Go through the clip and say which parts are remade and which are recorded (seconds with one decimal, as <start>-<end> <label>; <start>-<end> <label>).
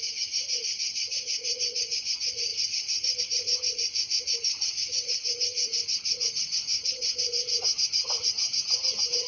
0.0-3.9 remade; 3.9-4.4 recorded; 4.4-9.3 remade